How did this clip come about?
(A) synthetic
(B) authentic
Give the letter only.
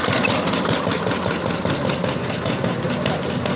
B